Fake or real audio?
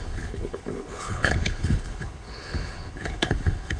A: fake